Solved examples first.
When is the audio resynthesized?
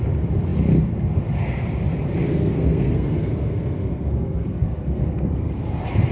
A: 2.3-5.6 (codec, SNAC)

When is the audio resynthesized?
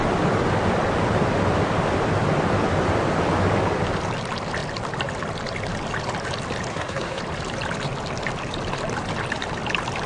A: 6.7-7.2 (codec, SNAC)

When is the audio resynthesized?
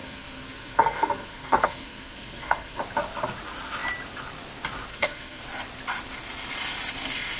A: 0.0-2.8 (codec, SNAC); 4.9-5.4